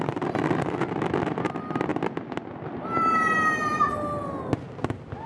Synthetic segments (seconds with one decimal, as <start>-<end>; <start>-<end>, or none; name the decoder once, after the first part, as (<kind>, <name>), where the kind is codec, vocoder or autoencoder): none